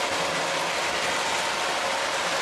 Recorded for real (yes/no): yes